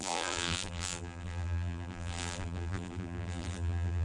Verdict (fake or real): fake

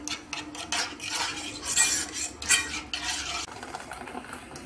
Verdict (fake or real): real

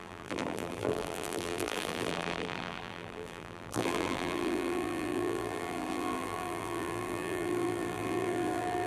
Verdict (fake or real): fake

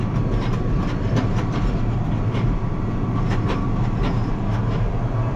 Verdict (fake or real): real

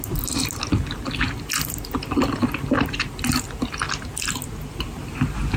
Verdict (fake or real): real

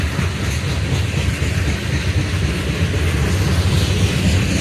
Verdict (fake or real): real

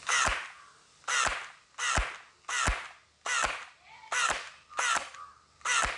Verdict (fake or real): real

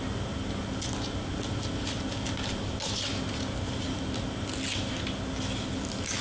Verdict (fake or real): real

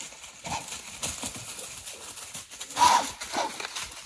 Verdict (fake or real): real